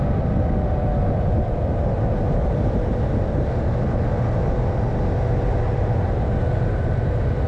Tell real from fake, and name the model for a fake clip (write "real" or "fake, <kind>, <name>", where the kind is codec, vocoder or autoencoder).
real